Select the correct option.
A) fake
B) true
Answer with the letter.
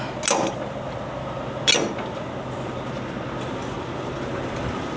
B